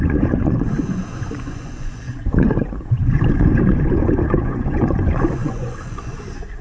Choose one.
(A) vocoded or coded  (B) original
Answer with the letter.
A